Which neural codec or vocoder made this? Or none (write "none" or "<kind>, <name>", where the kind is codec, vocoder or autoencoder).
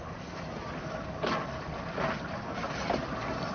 none